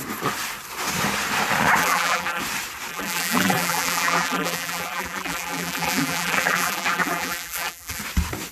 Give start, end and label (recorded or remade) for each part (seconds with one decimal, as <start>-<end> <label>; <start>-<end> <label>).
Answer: 0.0-1.8 recorded; 1.8-2.4 remade; 2.4-2.9 recorded; 2.9-8.0 remade; 8.0-8.5 recorded